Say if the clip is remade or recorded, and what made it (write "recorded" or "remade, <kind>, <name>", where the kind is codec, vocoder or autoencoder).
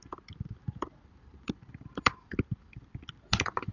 remade, vocoder, BigVGAN v2